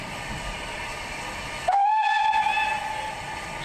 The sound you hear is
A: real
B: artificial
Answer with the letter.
A